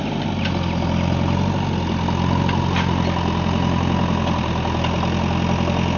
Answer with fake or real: real